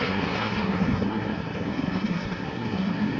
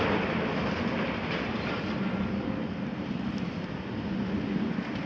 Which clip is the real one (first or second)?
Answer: second